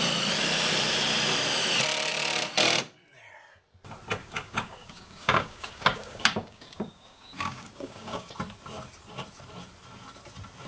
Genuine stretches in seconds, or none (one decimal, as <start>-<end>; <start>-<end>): 0.0-4.2; 8.3-10.7